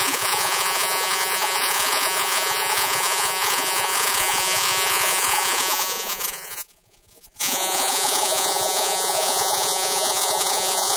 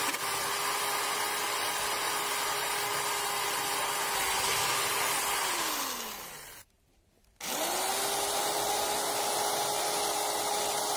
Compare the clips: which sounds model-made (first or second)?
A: first